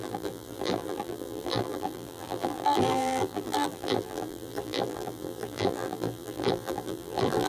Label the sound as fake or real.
fake